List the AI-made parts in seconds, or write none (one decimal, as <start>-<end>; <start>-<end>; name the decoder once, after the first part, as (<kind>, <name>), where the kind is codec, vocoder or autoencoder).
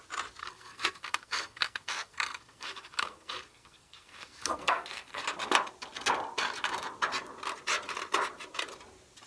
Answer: 0.4-5.2 (codec, SNAC)